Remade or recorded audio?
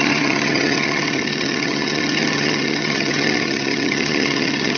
remade